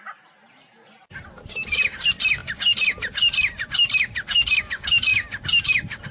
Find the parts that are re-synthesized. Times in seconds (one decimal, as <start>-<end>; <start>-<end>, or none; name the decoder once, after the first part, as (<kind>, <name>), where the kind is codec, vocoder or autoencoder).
none